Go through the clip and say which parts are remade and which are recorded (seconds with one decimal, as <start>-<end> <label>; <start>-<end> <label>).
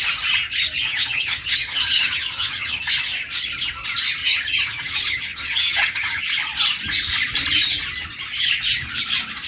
0.0-0.9 recorded; 0.9-2.8 remade; 2.8-4.2 recorded; 4.2-6.2 remade; 6.2-9.5 recorded